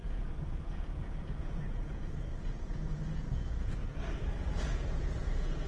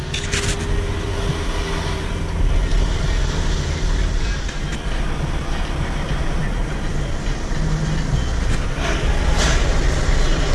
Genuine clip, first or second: second